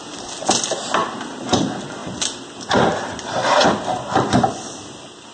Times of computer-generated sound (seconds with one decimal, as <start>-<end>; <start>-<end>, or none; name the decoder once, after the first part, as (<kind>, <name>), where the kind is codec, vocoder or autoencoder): none